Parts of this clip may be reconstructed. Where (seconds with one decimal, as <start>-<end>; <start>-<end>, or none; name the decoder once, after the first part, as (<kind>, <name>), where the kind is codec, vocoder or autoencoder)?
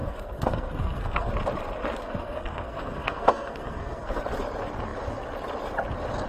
0.0-1.3 (codec, SNAC); 2.0-4.2